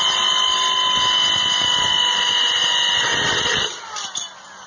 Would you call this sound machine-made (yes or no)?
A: no